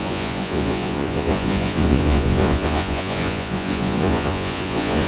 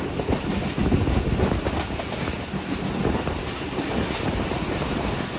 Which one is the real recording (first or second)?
second